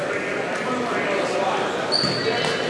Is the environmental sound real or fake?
real